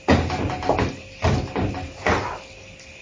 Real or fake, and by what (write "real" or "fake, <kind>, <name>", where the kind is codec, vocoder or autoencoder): real